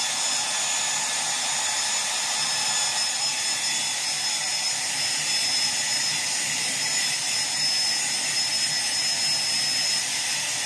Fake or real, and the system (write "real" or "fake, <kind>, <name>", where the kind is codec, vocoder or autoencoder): real